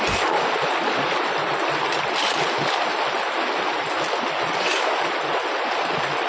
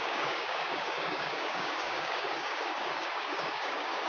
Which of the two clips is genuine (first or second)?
first